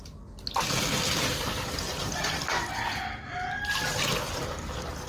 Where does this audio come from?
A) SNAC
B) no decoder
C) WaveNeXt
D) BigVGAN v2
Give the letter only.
B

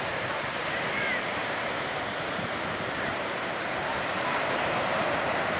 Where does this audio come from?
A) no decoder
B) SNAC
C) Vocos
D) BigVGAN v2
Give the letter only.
D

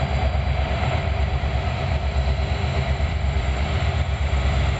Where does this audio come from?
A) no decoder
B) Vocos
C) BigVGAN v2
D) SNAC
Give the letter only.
C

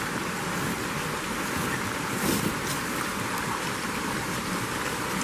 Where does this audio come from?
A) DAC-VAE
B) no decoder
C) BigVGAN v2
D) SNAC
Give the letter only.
B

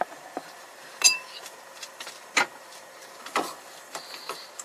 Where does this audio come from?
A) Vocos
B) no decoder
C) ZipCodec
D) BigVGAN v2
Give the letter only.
D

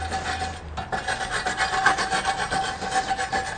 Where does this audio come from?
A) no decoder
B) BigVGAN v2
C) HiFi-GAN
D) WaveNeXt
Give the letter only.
A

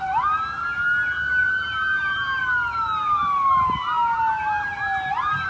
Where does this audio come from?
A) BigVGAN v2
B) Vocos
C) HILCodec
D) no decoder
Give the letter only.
D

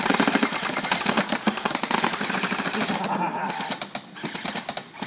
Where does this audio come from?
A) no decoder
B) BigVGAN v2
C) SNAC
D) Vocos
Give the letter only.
A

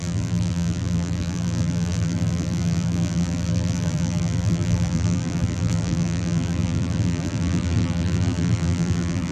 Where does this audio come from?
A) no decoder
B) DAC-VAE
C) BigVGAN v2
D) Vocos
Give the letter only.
C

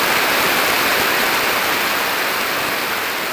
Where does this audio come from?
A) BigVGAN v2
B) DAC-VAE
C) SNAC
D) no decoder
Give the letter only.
D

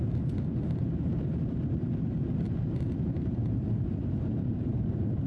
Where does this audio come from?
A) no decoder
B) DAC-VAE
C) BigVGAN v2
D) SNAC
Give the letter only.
C